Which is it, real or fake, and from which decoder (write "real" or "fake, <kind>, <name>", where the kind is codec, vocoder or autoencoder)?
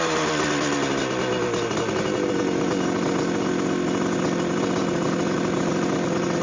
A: real